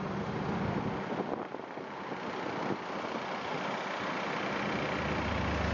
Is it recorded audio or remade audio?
recorded